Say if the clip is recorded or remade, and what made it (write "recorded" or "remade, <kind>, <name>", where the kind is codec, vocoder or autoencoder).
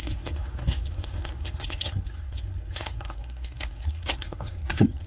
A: remade, codec, SNAC